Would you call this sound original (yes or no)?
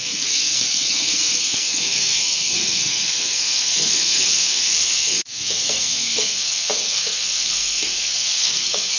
no